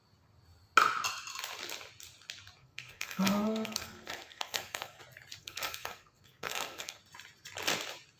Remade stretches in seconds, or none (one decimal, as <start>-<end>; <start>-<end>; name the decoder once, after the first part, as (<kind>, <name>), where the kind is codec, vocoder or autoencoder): 2.6-5.0 (codec, SNAC); 5.4-7.0